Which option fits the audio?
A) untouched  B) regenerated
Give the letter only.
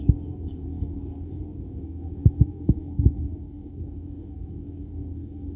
B